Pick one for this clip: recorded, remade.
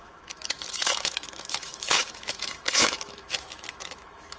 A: remade